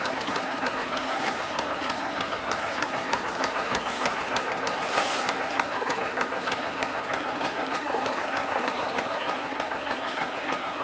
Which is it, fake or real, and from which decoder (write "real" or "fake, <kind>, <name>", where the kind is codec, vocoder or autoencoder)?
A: fake, codec, SNAC